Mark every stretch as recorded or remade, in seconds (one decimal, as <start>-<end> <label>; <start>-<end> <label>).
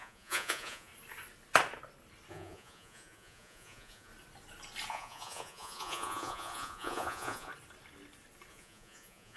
0.0-0.9 remade; 0.9-2.3 recorded; 2.3-4.1 remade; 4.1-4.9 recorded; 4.9-7.5 remade; 7.5-8.5 recorded; 8.5-9.4 remade